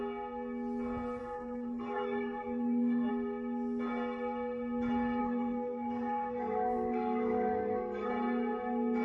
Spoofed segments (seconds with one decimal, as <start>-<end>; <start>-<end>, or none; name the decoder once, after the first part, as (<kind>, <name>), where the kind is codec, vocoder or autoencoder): 1.2-3.1 (codec, SNAC); 5.2-8.1